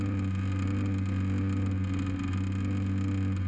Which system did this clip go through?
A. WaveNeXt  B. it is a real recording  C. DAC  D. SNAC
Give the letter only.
B